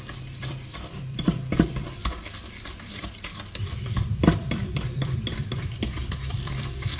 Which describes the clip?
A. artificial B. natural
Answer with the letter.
A